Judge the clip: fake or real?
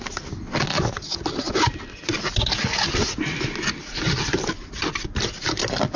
real